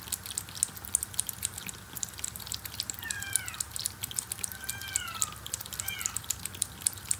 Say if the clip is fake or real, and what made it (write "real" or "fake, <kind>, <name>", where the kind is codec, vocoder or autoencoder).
real